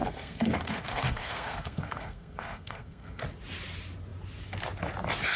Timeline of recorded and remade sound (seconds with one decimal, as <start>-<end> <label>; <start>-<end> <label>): 0.0-3.2 remade; 3.2-5.4 recorded